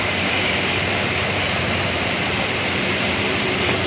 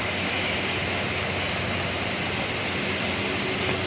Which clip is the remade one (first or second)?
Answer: first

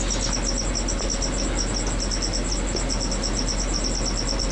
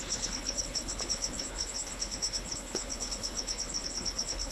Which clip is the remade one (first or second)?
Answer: second